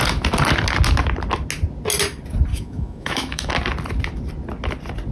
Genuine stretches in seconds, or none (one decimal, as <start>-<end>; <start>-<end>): 0.0-2.5; 3.5-5.1

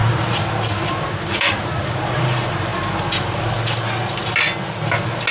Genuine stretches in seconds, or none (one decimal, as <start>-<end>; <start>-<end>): 2.2-5.3

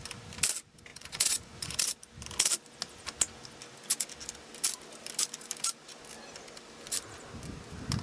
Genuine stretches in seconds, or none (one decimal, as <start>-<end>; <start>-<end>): 0.0-0.9; 1.8-8.0

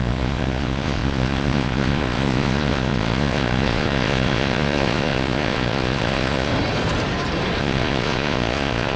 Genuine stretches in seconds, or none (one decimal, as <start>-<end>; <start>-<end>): 6.5-7.6

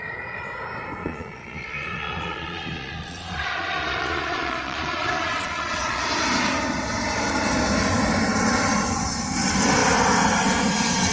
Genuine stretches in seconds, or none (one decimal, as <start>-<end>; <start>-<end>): 0.0-1.0; 6.0-11.1